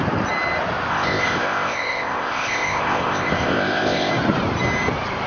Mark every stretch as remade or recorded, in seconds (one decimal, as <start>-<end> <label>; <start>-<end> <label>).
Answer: 0.0-0.9 recorded; 0.9-4.1 remade; 4.1-5.3 recorded